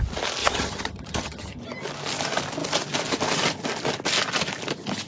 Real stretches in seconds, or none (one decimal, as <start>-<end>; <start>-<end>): 0.0-0.4; 1.6-5.1